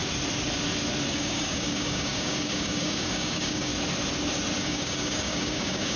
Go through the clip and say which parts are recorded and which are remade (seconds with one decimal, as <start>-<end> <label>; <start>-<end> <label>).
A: 0.0-1.1 recorded; 1.1-3.7 remade; 3.7-4.6 recorded; 4.6-6.0 remade